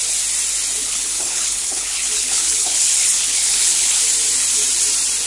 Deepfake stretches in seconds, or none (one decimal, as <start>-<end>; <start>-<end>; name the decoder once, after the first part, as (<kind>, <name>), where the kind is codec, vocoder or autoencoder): 0.8-4.0 (codec, HILCodec)